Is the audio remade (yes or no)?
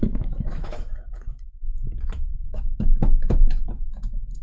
yes